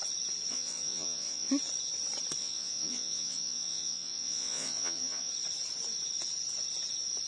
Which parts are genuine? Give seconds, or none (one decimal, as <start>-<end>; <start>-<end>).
0.0-0.5; 1.5-2.4; 5.3-7.3